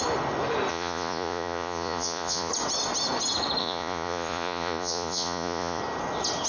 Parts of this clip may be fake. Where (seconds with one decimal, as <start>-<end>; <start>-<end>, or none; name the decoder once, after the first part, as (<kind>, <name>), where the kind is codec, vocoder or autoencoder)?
0.7-2.5 (vocoder, Vocos); 3.6-5.8